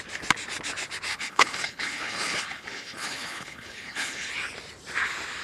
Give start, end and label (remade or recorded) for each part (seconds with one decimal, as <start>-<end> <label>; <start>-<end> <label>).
0.0-1.1 recorded; 1.1-4.3 remade; 4.3-5.4 recorded